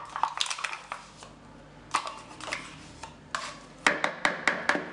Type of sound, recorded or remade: recorded